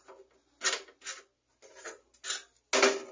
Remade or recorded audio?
recorded